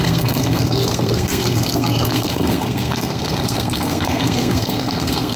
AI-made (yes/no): yes